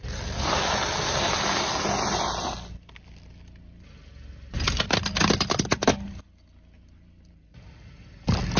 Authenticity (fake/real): real